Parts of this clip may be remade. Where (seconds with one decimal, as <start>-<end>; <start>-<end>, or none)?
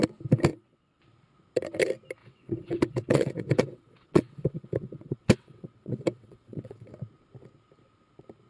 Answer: 0.5-1.0; 2.2-6.9